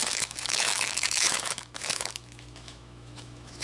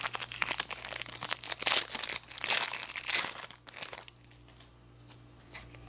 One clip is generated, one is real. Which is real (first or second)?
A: second